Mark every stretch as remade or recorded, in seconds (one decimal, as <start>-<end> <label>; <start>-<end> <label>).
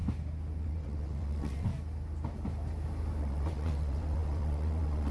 0.0-0.6 recorded; 0.6-1.7 remade; 1.7-3.2 recorded; 3.2-5.1 remade